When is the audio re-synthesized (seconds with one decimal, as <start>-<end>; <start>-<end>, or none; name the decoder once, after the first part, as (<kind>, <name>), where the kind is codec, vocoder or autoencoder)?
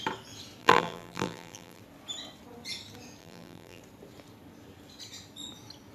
0.6-1.8 (vocoder, BigVGAN v2); 3.2-3.8